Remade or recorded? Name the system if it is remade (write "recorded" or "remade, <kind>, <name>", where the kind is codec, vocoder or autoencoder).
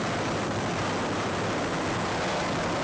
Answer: recorded